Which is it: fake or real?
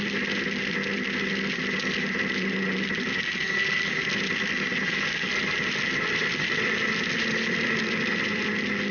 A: real